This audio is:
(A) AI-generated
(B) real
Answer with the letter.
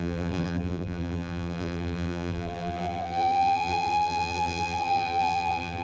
A